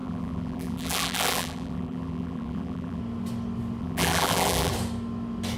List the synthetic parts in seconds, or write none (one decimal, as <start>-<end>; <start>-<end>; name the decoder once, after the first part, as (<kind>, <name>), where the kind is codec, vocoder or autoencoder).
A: 0.0-3.0 (vocoder, BigVGAN v2); 3.8-4.7